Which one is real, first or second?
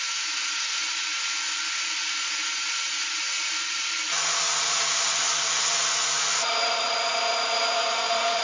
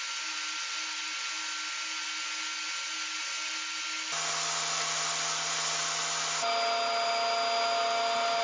second